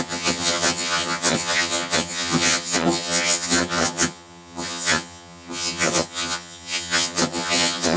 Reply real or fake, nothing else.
fake